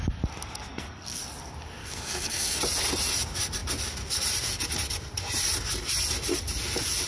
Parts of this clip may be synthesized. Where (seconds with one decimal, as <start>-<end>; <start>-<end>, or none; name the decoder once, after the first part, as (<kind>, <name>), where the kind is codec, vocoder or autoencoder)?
0.7-1.2 (codec, SNAC); 1.8-2.6

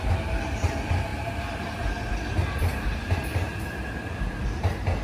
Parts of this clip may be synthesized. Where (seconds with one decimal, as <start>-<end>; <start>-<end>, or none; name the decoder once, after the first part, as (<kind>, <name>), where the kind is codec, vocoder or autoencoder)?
none

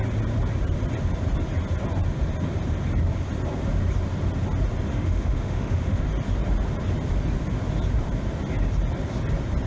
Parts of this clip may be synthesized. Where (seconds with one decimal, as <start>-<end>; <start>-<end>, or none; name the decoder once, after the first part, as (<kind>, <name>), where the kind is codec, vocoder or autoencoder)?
4.9-6.1 (autoencoder, DAC-VAE)

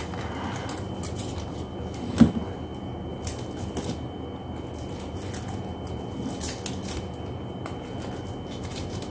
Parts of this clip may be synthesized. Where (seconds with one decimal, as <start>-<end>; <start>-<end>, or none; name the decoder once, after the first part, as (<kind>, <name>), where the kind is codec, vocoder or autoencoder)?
none

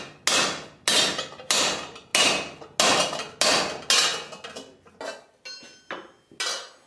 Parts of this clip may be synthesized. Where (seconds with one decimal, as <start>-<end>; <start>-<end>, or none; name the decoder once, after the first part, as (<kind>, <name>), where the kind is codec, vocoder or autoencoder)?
none

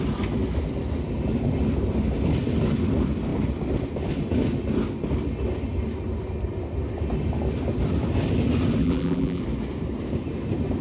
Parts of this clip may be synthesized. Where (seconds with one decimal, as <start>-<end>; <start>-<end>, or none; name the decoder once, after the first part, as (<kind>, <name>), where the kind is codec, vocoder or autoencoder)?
8.8-9.4 (vocoder, BigVGAN v2)

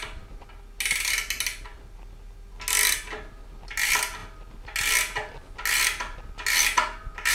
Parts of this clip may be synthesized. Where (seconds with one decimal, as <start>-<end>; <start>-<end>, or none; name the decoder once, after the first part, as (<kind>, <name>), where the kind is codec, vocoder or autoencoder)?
none

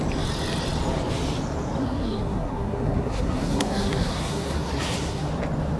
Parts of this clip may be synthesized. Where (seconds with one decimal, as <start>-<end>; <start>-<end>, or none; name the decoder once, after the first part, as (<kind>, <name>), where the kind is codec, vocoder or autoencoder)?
1.8-5.3 (codec, SNAC)